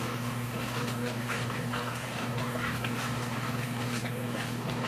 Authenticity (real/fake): fake